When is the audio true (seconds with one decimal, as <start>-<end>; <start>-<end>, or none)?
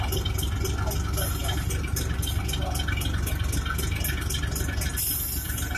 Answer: 0.0-5.8